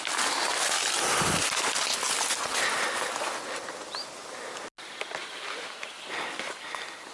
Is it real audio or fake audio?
real